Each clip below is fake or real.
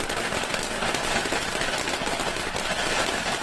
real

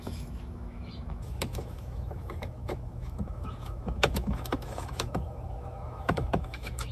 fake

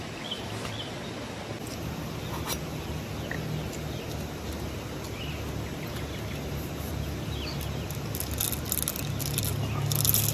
real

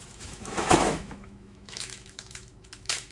fake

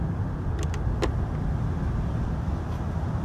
real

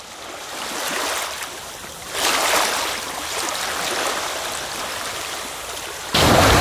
real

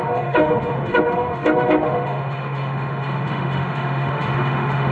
fake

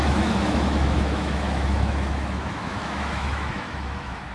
fake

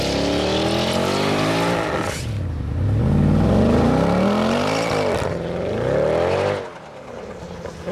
real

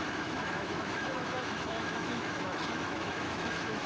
fake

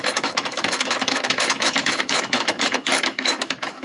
fake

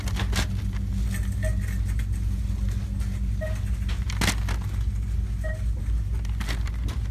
real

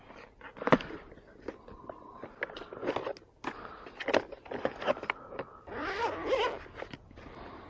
real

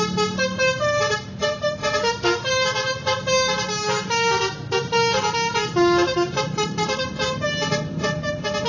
real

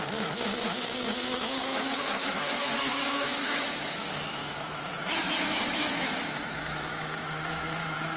fake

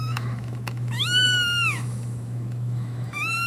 fake